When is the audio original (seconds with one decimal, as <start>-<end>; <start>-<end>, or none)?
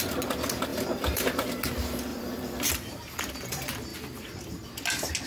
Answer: 0.0-0.7; 1.5-2.1; 2.7-3.9; 4.7-5.3